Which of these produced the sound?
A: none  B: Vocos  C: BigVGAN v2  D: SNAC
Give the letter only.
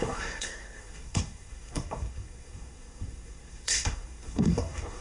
D